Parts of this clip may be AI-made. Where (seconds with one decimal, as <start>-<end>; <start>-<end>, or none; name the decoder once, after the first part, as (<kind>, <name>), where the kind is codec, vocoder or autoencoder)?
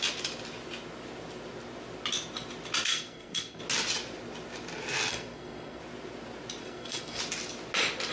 2.9-3.6 (codec, SNAC); 5.1-5.8; 6.6-7.2